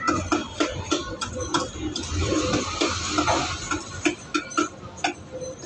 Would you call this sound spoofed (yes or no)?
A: no